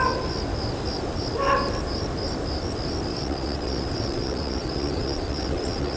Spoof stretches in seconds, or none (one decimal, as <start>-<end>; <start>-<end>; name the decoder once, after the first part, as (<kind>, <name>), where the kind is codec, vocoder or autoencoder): 3.1-6.0 (vocoder, WaveNeXt)